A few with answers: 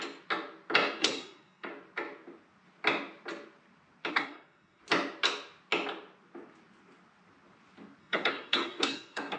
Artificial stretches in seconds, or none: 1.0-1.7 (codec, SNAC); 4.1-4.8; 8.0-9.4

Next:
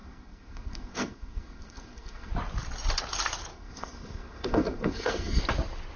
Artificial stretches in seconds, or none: 0.0-2.3 (codec, SNAC); 3.5-5.4

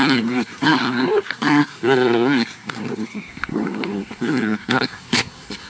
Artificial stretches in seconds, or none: 0.0-5.7 (codec, SNAC)

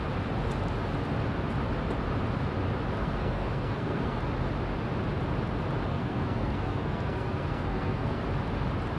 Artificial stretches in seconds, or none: 3.0-4.2 (codec, SNAC); 5.9-8.2

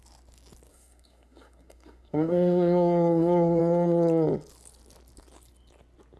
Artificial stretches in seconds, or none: 0.7-3.6 (codec, SNAC)

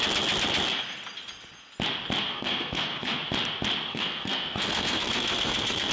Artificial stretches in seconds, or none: 2.3-3.2 (codec, SNAC); 3.9-5.9

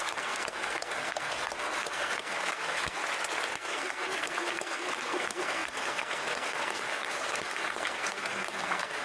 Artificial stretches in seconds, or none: 0.0-3.0 (codec, SNAC); 3.5-9.0